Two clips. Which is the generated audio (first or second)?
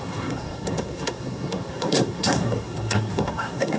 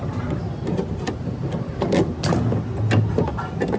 first